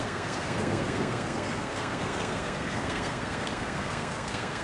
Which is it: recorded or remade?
remade